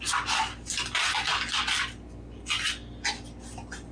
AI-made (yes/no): no